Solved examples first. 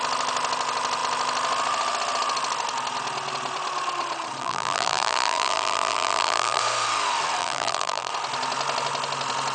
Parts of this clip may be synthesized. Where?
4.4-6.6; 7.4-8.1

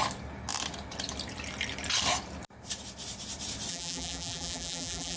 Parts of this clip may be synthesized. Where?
3.7-5.2

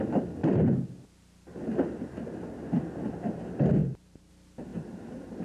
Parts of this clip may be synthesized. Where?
3.8-4.3; 4.7-5.4

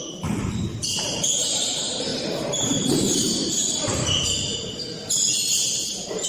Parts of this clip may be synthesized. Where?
0.0-6.3

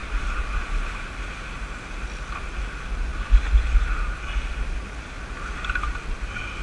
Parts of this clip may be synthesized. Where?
0.0-1.1